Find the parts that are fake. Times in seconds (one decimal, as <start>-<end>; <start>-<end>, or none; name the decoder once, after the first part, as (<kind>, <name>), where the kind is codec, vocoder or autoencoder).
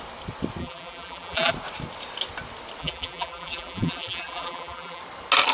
0.6-1.5 (vocoder, BigVGAN v2); 2.8-5.0